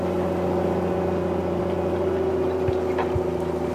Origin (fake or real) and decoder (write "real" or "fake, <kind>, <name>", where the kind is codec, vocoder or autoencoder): real